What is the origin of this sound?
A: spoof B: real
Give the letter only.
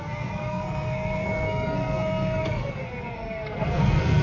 A